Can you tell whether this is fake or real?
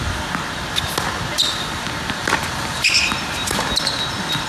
real